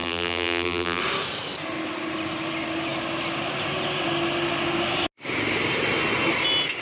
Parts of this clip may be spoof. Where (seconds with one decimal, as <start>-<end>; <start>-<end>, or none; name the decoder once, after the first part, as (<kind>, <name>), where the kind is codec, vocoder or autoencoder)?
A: 0.0-1.0 (vocoder, BigVGAN v2)